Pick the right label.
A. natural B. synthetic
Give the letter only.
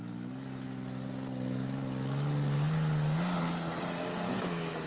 A